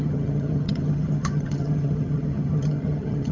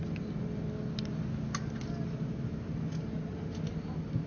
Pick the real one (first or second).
second